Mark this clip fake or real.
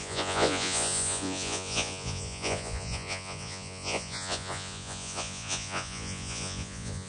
fake